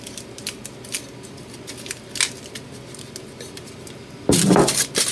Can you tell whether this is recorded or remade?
recorded